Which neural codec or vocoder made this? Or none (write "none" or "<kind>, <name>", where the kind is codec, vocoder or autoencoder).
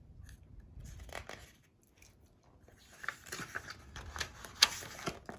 none